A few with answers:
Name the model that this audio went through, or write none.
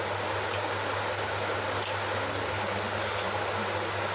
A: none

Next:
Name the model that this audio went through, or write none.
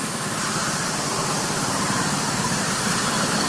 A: vocoder, BigVGAN v2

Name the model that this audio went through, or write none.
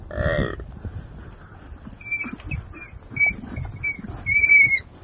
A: none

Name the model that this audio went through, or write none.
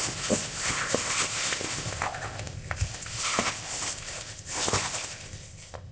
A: codec, ZipCodec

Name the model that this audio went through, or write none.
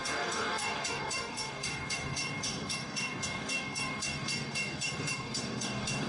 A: codec, DAC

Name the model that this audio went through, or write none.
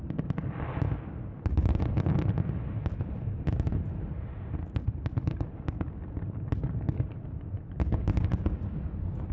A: none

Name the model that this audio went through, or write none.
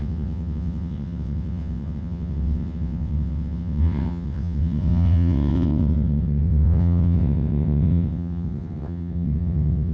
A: vocoder, WaveNeXt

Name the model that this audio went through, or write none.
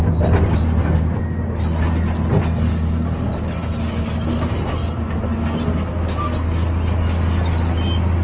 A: none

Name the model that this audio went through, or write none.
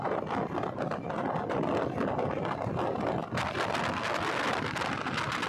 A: none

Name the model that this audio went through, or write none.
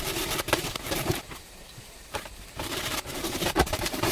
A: vocoder, BigVGAN v2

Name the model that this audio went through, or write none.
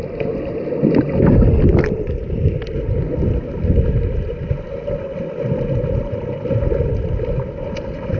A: none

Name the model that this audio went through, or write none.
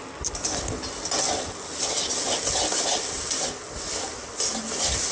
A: none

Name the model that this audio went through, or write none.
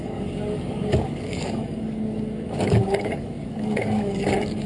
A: codec, DAC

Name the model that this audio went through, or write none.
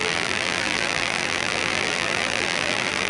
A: vocoder, BigVGAN v2